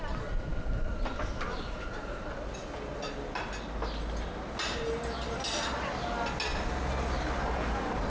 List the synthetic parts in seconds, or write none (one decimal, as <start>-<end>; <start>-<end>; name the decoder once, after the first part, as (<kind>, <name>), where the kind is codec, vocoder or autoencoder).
none